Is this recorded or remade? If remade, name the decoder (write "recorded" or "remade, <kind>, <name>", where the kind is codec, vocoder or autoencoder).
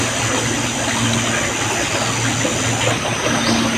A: recorded